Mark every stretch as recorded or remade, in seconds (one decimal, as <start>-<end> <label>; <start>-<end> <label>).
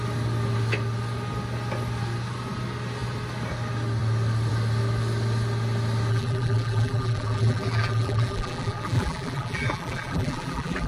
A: 0.0-6.1 recorded; 6.1-10.9 remade